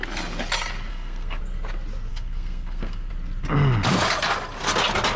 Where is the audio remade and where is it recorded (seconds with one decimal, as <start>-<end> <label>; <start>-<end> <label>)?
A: 0.0-0.9 recorded; 0.9-1.4 remade; 1.4-2.1 recorded; 2.1-3.1 remade; 3.1-5.2 recorded